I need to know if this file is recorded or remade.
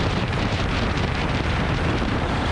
remade